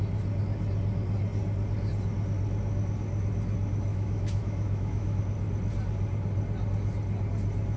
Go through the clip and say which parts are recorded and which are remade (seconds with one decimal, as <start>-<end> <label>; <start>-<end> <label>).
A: 0.0-3.9 recorded; 3.9-5.2 remade; 5.2-7.8 recorded

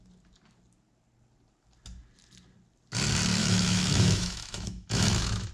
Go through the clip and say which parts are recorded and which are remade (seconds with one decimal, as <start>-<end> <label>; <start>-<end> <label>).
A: 0.0-3.4 recorded; 3.4-5.5 remade

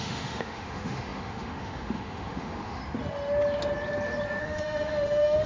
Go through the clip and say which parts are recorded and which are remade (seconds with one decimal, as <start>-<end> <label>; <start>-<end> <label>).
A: 0.0-2.8 remade; 2.8-4.4 recorded; 4.4-5.5 remade

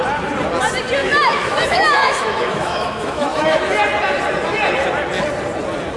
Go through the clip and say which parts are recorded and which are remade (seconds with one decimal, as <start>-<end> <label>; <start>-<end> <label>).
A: 0.0-1.0 recorded; 1.0-3.6 remade; 3.6-6.0 recorded

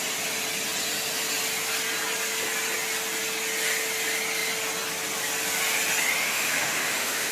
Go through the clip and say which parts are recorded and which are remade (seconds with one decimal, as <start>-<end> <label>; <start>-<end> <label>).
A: 0.0-6.2 recorded; 6.2-7.3 remade

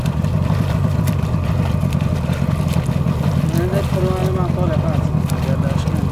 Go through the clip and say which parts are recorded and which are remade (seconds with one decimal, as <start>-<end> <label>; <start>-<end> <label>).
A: 0.0-6.1 recorded